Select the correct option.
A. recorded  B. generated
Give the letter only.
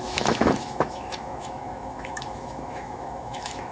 B